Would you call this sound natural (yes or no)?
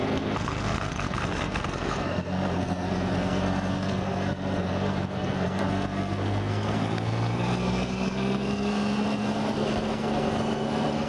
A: no